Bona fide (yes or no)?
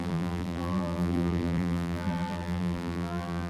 no